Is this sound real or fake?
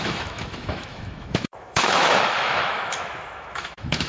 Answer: fake